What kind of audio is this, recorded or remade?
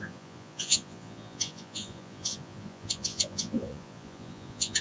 remade